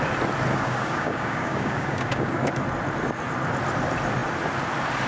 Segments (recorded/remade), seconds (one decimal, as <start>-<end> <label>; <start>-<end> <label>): 0.0-0.5 recorded; 0.5-2.5 remade; 2.5-5.1 recorded